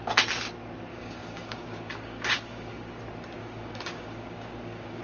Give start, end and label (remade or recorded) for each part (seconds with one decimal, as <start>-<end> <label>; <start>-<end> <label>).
0.0-0.9 recorded; 0.9-3.0 remade; 3.0-3.4 recorded; 3.4-5.0 remade